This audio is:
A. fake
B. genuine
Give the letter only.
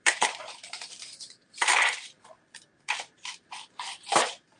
A